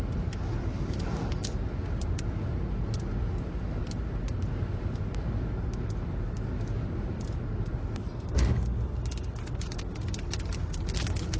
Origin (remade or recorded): recorded